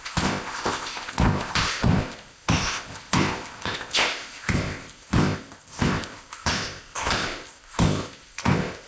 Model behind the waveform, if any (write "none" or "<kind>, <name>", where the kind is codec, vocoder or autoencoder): codec, ZipCodec